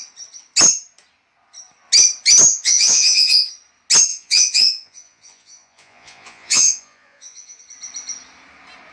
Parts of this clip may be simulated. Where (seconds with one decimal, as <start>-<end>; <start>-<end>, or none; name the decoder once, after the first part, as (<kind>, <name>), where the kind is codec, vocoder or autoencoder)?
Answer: 2.5-3.5 (vocoder, Vocos); 4.1-7.6